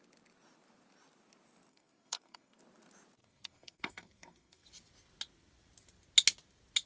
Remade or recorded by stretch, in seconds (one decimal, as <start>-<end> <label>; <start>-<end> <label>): 0.0-1.7 recorded; 1.7-2.6 remade; 2.6-3.2 recorded; 3.2-4.7 remade; 4.7-6.9 recorded